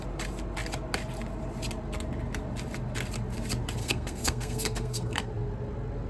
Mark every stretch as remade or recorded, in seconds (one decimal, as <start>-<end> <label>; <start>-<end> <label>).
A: 0.0-3.8 recorded; 3.8-5.3 remade; 5.3-6.1 recorded